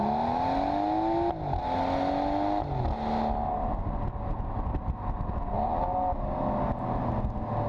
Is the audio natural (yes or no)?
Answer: yes